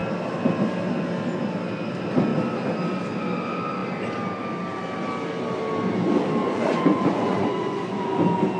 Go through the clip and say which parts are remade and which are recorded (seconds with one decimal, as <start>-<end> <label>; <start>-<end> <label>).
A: 0.0-6.4 recorded; 6.4-8.1 remade; 8.1-8.6 recorded